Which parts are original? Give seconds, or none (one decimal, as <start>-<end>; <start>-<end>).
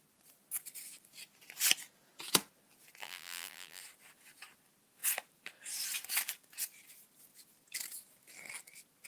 0.0-3.0; 3.8-9.1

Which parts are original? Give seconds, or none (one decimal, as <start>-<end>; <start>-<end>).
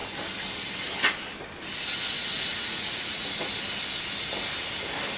0.0-2.2; 3.5-5.2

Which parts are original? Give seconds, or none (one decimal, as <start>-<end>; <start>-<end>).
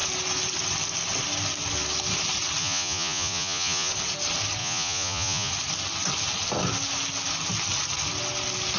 0.0-2.6; 3.9-4.6; 5.5-8.8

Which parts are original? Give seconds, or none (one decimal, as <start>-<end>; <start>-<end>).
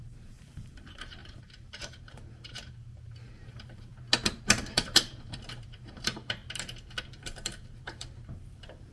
3.9-4.7; 6.4-7.0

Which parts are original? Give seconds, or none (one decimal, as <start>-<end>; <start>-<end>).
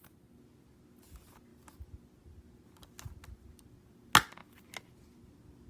0.0-5.7